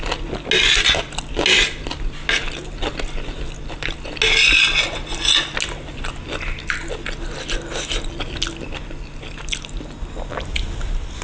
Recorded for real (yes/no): yes